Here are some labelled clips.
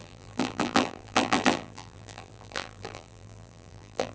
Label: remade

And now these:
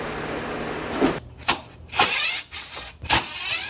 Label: recorded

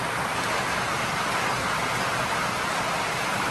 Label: recorded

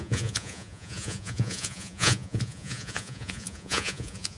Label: remade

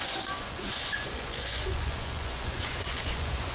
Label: remade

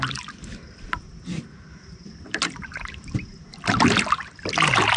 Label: recorded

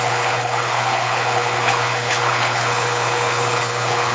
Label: remade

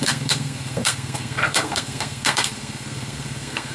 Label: remade